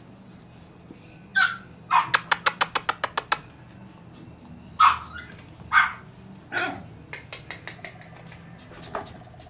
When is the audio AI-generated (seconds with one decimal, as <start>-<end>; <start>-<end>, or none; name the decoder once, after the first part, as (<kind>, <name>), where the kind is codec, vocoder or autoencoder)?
none